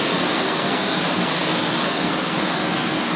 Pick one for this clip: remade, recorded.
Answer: remade